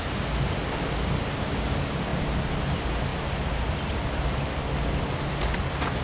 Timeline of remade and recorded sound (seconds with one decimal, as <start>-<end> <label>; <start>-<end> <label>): 0.0-6.0 recorded